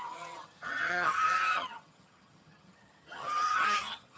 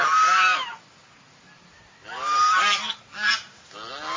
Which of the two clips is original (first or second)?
second